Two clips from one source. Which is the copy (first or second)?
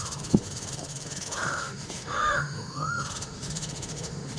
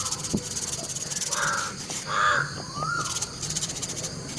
first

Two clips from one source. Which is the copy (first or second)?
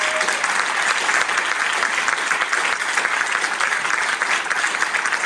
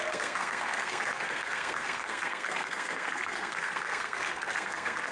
second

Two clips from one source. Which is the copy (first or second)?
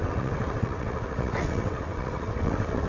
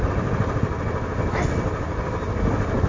first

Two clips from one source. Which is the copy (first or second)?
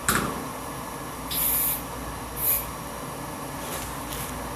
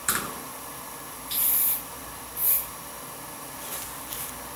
second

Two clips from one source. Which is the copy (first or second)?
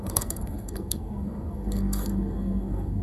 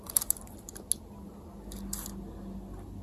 first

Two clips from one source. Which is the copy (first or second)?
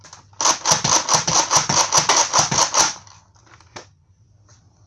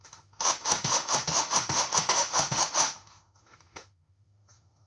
second